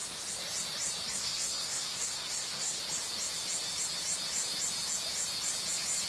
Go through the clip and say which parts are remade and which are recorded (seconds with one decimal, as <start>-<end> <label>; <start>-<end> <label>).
0.0-1.1 recorded; 1.1-2.8 remade; 2.8-6.1 recorded